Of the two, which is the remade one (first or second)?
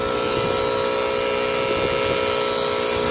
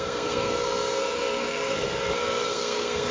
second